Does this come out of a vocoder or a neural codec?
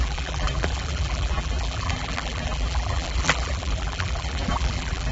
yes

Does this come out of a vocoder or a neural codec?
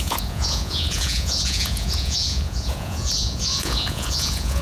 yes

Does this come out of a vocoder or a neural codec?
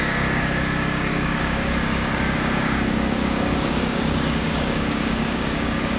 yes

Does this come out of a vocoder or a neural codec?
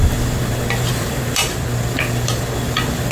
no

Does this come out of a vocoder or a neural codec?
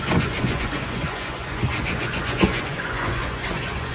yes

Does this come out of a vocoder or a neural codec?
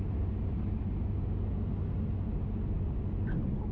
no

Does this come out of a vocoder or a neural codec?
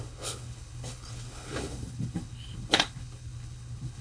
yes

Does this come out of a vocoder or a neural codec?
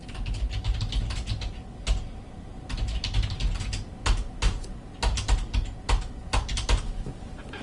no